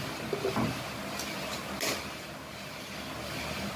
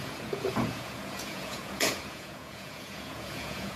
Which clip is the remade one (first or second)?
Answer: second